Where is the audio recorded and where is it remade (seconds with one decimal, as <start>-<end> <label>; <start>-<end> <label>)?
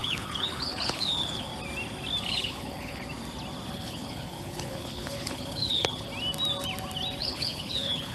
0.0-1.5 remade; 1.5-2.2 recorded; 2.2-3.0 remade; 3.0-3.7 recorded; 3.7-6.1 remade; 6.1-7.2 recorded; 7.2-8.1 remade